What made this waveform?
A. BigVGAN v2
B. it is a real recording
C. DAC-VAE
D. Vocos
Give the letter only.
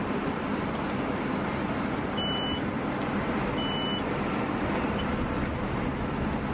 B